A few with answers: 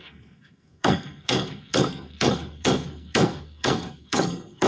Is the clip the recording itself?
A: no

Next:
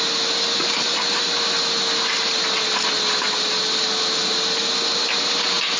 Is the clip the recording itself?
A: yes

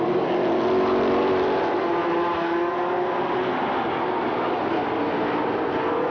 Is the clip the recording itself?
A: yes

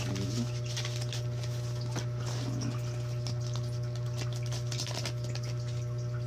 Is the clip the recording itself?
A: yes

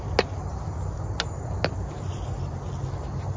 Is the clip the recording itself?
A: yes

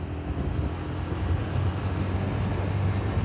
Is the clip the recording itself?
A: yes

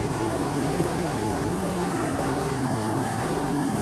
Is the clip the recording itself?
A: no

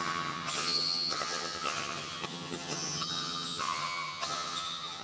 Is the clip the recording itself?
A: no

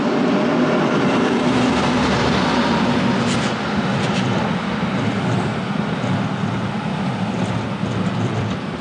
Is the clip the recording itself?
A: yes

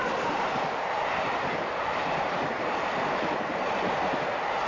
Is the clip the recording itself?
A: yes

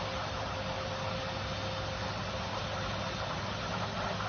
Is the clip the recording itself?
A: yes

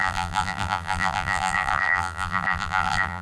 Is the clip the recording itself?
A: no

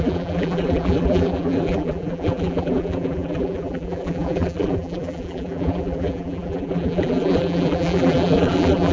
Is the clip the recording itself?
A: no